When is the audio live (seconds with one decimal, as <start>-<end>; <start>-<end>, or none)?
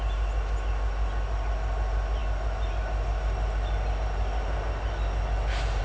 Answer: 0.0-5.8